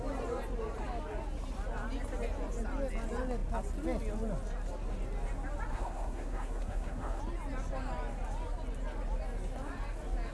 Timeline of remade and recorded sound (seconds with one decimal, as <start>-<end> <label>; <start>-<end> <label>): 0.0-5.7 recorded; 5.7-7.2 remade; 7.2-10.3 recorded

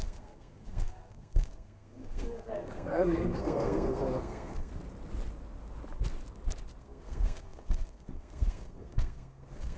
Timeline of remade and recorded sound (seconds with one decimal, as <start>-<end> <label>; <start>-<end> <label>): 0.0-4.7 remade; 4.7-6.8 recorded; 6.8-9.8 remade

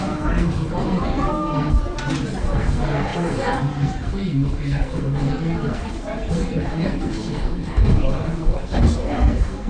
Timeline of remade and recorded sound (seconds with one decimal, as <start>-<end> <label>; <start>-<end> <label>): 0.0-1.8 remade; 1.8-2.4 recorded; 2.4-9.7 remade

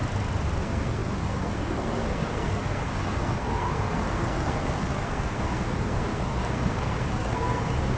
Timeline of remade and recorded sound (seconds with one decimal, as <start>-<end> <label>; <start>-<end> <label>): 0.0-0.6 recorded; 0.6-8.0 remade